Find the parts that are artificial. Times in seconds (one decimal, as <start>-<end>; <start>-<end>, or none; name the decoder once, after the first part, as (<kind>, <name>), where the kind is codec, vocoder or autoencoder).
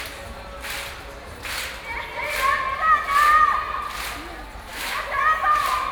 4.7-5.2 (autoencoder, DAC-VAE)